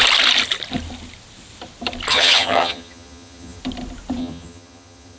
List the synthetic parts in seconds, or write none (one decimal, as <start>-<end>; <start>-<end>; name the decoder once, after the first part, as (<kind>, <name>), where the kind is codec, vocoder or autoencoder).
2.1-3.6 (vocoder, HiFi-GAN); 4.2-5.2